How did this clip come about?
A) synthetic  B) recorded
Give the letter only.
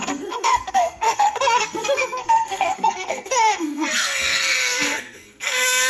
A